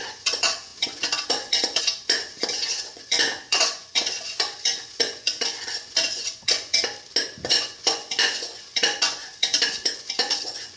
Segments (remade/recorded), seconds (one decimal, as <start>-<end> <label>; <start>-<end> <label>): 0.0-6.8 remade; 6.8-7.4 recorded; 7.4-10.8 remade